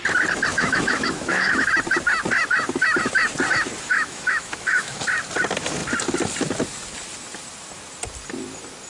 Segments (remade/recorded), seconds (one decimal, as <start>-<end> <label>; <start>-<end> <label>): 0.0-0.5 recorded; 0.5-1.7 remade; 1.7-3.9 recorded; 3.9-5.0 remade; 5.0-8.9 recorded